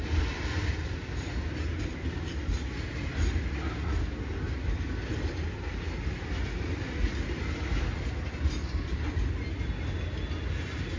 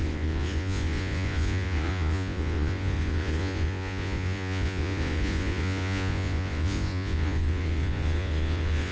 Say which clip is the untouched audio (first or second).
first